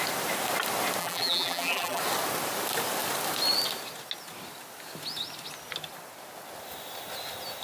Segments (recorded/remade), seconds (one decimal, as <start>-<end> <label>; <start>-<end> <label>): 0.0-1.0 recorded; 1.0-2.0 remade; 2.0-7.6 recorded